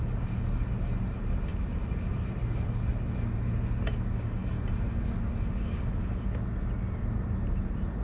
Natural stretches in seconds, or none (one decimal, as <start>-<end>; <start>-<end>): 0.0-8.0